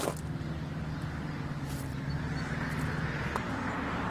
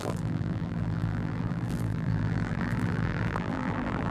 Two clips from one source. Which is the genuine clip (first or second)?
first